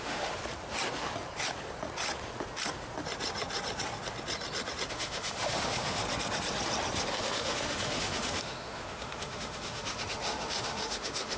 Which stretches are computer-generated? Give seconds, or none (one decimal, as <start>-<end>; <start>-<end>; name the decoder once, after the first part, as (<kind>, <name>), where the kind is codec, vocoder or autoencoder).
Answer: 0.0-0.4 (autoencoder, DAC-VAE); 4.9-6.0; 7.1-11.4